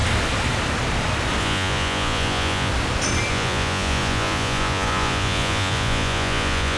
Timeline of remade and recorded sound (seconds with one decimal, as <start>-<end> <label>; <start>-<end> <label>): 0.0-1.4 recorded; 1.4-2.7 remade; 2.7-3.3 recorded; 3.3-6.8 remade